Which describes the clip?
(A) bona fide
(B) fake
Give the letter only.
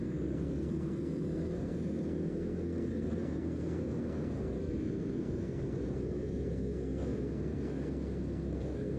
B